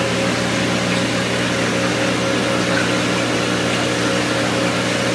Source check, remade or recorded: recorded